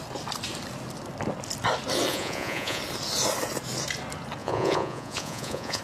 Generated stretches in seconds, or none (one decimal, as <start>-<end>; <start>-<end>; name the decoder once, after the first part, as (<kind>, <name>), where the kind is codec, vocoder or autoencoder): 2.1-2.8 (vocoder, Vocos); 4.4-5.8